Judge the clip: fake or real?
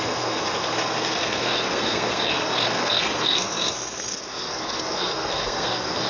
fake